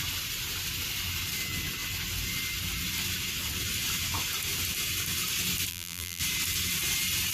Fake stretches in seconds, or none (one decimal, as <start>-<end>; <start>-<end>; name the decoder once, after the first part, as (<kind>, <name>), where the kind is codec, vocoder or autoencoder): 5.7-6.2 (vocoder, BigVGAN v2)